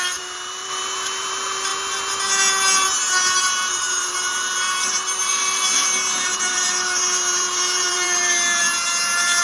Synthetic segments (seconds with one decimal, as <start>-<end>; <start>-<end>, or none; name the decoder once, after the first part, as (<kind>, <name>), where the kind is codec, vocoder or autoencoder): 0.0-1.7 (vocoder, BigVGAN v2); 3.4-9.4